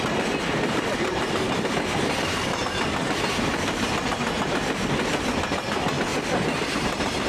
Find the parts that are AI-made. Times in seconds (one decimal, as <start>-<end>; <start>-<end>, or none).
0.9-2.6; 6.1-7.3